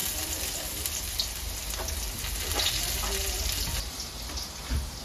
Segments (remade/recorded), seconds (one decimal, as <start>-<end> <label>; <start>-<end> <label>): 0.0-5.0 recorded